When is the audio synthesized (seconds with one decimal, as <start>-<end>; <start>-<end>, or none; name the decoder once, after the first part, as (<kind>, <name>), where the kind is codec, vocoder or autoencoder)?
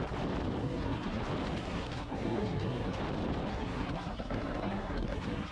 0.6-1.2 (codec, SNAC); 1.6-3.0; 3.5-5.5